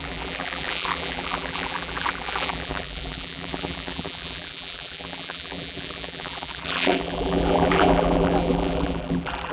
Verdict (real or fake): fake